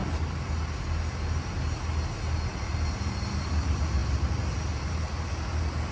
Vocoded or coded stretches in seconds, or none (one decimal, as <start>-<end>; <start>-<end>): none

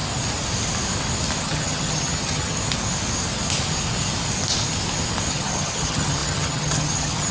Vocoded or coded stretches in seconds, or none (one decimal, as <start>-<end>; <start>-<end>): 1.4-2.6; 5.3-7.3